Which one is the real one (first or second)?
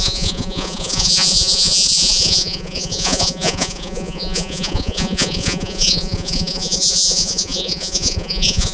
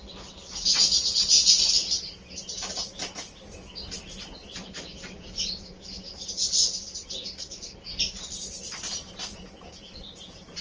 second